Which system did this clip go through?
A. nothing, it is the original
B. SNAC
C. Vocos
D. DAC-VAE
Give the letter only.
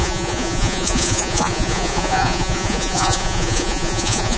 C